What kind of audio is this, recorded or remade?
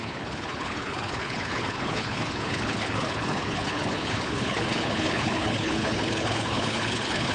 remade